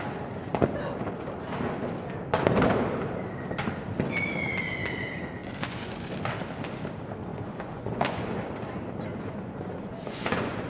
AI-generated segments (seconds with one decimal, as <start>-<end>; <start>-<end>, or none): 5.4-6.1; 7.3-8.4; 9.1-10.7